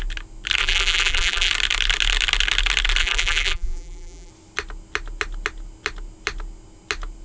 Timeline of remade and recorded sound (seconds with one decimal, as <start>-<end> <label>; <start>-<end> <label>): 0.0-0.6 recorded; 0.6-1.5 remade; 1.5-3.0 recorded; 3.0-4.3 remade; 4.3-7.2 recorded